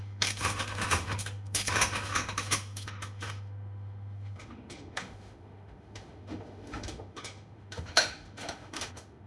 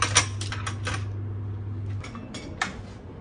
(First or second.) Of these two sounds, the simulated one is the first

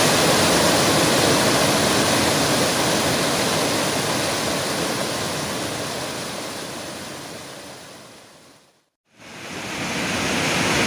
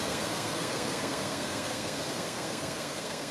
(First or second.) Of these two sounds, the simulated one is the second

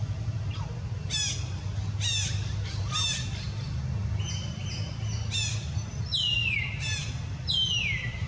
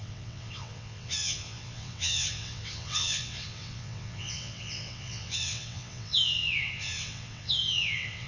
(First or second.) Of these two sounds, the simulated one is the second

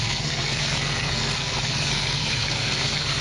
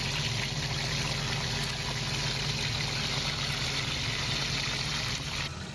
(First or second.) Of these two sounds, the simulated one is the first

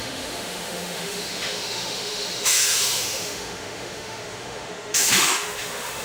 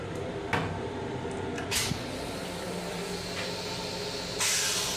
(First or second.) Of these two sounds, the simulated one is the first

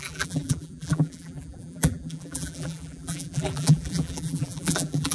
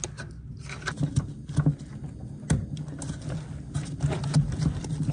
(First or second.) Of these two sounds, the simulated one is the first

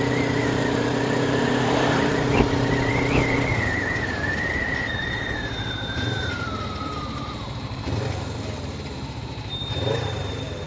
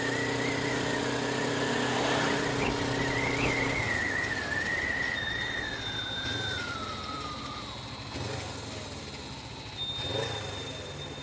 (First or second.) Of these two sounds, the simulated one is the first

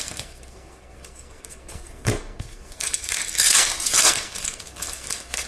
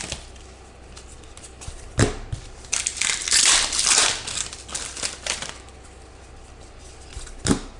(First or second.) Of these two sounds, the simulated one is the first